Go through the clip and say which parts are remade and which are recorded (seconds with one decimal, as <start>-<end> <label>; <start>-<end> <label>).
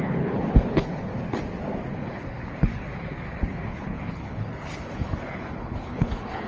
0.0-1.1 remade; 1.1-1.9 recorded; 1.9-6.5 remade